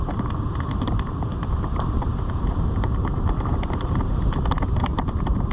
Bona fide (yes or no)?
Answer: no